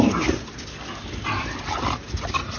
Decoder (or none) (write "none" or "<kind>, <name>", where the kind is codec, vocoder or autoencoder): none